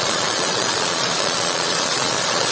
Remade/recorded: remade